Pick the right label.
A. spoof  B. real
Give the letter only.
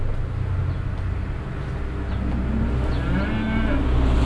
B